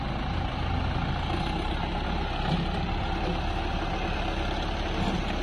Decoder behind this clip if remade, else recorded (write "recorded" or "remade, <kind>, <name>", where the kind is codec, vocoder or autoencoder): recorded